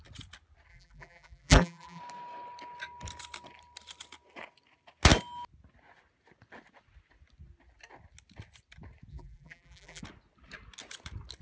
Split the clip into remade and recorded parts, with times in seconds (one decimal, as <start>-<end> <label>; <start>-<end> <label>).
0.0-0.7 recorded; 0.7-2.0 remade; 2.0-9.1 recorded; 9.1-10.0 remade; 10.0-11.4 recorded

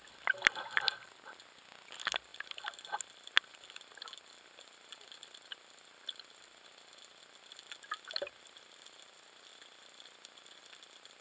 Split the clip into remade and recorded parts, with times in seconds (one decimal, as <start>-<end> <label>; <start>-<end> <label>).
0.0-11.2 recorded

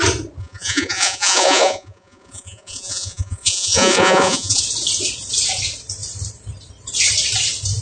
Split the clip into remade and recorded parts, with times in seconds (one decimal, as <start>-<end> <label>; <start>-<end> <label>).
0.0-0.4 recorded; 0.4-4.6 remade; 4.6-7.8 recorded

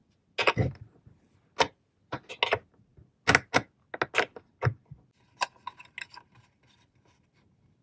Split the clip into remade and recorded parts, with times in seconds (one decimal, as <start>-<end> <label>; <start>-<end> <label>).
0.0-7.8 recorded